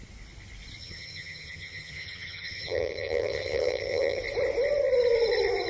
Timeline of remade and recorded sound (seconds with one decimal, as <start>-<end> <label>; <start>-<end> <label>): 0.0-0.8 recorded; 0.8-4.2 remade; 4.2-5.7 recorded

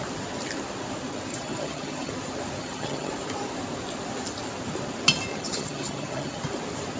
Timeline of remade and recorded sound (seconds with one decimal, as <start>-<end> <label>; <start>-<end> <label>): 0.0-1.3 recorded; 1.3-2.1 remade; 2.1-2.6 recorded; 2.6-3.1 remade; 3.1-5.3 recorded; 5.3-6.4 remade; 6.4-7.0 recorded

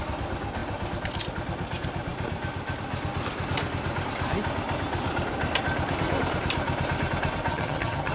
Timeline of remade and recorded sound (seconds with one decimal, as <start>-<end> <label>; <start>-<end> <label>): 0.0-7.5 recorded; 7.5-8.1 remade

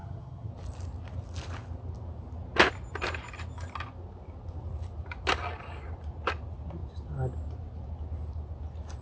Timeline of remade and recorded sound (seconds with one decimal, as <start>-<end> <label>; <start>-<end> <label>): 0.0-0.5 remade; 0.5-9.0 recorded